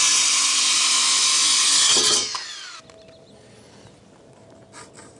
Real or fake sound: real